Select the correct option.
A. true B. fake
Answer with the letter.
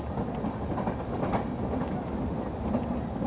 A